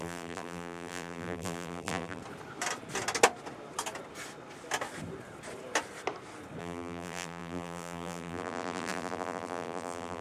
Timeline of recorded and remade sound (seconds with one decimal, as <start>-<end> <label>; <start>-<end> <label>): 0.0-2.2 remade; 2.2-6.6 recorded; 6.6-10.2 remade